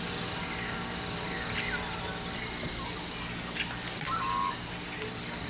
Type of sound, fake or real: real